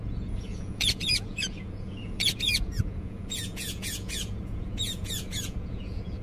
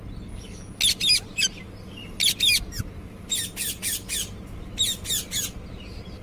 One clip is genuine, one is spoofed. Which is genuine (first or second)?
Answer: second